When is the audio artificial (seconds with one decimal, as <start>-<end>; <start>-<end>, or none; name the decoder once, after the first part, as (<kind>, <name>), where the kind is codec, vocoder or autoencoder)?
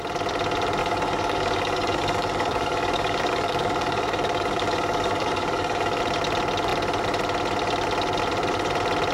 0.8-6.0 (codec, DAC)